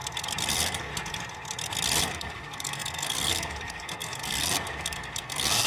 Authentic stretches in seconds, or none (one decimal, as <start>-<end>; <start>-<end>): 0.0-0.5; 0.9-2.0